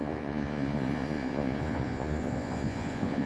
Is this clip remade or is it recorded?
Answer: remade